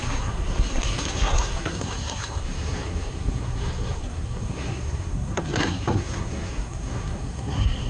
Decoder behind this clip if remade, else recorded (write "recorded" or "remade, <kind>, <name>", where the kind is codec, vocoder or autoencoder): remade, codec, SNAC